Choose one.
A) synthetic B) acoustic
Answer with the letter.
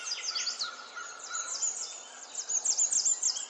B